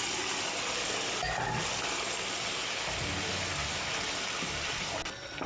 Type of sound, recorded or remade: recorded